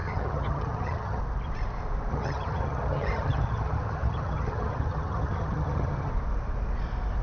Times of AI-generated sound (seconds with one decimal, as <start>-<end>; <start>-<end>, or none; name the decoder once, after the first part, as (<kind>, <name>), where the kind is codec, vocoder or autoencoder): 0.0-1.2 (vocoder, HiFi-GAN); 2.1-6.1